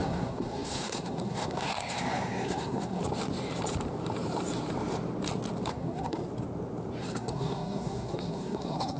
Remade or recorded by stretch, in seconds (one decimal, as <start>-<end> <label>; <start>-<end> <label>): 0.0-3.0 remade; 3.0-5.7 recorded; 5.7-6.2 remade; 6.2-7.0 recorded; 7.0-9.0 remade